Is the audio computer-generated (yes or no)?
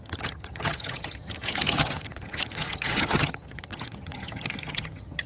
yes